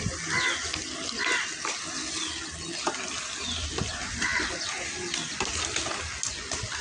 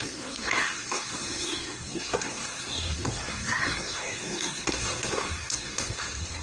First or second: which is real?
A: first